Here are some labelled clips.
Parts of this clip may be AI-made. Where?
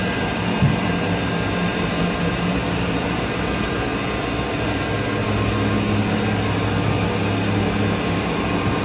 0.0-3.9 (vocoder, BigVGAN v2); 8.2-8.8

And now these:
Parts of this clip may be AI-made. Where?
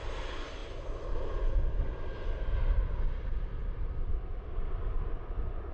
none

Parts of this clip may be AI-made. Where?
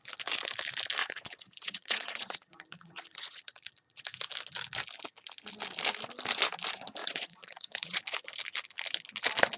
1.0-4.0 (vocoder, Vocos); 7.0-8.0